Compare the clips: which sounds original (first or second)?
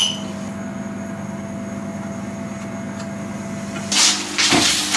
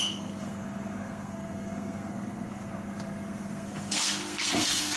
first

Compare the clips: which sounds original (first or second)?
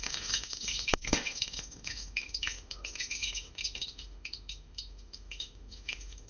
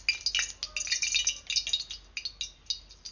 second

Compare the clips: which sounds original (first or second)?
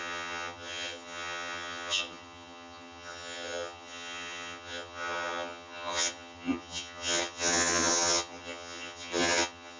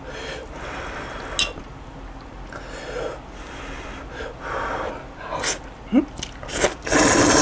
second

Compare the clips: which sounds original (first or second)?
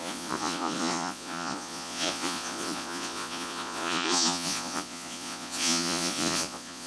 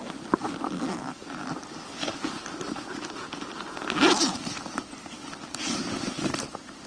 second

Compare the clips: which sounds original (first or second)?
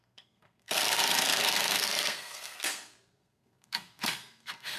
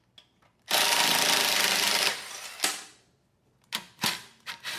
second